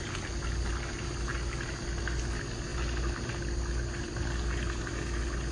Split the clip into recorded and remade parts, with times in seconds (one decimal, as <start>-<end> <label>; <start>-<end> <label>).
0.0-5.5 recorded